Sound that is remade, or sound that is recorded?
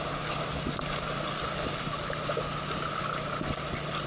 recorded